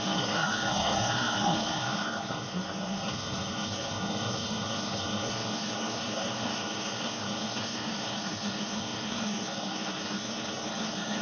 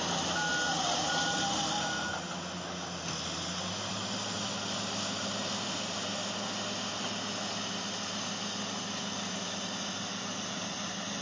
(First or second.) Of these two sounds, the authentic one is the second